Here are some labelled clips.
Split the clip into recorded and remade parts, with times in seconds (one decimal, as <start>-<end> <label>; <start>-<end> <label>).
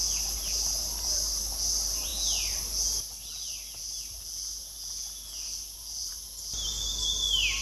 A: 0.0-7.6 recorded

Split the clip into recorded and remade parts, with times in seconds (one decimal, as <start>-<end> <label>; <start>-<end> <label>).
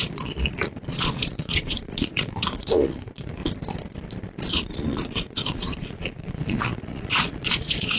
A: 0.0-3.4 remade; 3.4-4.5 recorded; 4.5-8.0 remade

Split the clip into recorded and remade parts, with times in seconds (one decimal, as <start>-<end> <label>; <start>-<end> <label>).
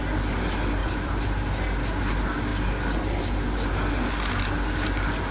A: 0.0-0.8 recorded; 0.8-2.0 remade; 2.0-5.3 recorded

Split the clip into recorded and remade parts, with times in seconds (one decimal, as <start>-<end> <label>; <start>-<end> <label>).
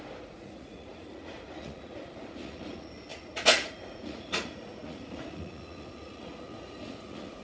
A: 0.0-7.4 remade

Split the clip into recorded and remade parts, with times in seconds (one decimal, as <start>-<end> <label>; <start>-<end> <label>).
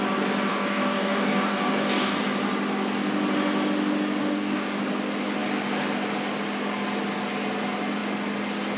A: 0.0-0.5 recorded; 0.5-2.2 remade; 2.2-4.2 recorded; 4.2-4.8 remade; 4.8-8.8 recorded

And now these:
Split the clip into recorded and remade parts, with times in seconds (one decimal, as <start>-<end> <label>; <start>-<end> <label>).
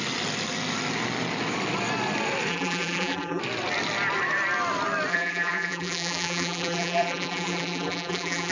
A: 0.0-2.5 recorded; 2.5-3.4 remade; 3.4-5.1 recorded; 5.1-8.5 remade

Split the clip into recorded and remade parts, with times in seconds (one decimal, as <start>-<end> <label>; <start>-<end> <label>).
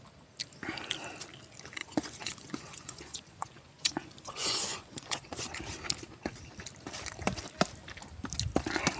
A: 0.0-1.8 recorded; 1.8-5.6 remade; 5.6-9.0 recorded